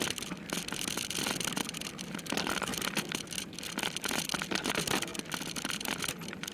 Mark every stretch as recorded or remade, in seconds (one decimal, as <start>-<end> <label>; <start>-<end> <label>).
0.0-6.5 recorded